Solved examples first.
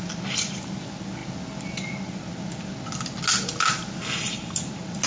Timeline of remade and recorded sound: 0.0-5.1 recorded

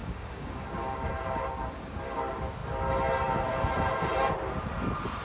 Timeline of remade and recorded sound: 0.0-1.1 remade; 1.1-5.2 recorded

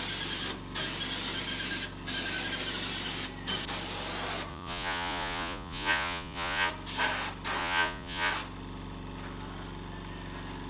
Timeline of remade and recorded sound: 0.0-4.5 recorded; 4.5-6.7 remade; 6.7-7.6 recorded; 7.6-8.3 remade; 8.3-10.7 recorded

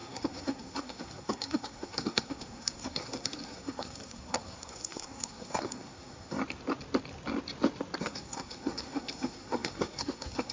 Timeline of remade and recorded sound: 0.0-6.4 remade; 6.4-8.0 recorded; 8.0-10.5 remade

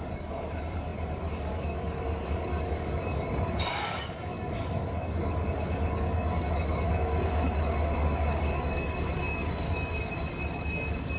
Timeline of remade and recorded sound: 0.0-11.2 remade

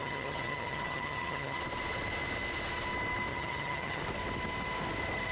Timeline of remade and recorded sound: 0.0-1.6 remade; 1.6-3.3 recorded; 3.3-4.0 remade; 4.0-5.3 recorded

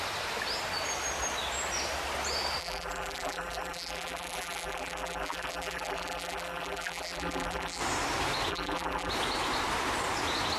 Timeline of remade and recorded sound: 0.0-2.6 recorded; 2.6-7.8 remade; 7.8-8.5 recorded; 8.5-9.1 remade; 9.1-10.6 recorded